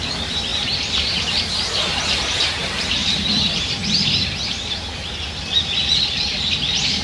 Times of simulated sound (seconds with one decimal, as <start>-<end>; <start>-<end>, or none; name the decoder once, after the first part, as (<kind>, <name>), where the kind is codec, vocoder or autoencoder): 0.0-3.0 (vocoder, BigVGAN v2); 5.4-7.0